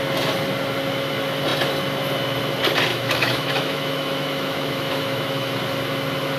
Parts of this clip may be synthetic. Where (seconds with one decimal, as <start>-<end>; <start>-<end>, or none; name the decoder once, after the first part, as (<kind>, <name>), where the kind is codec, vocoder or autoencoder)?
2.9-5.6 (autoencoder, DAC-VAE)